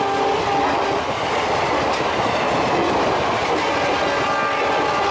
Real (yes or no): yes